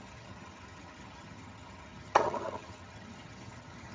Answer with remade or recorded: remade